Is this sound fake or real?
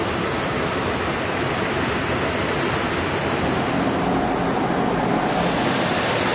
real